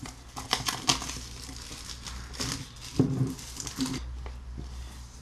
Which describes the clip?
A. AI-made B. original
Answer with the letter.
B